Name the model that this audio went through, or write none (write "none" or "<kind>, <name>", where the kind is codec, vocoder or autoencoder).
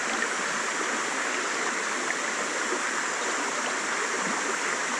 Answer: none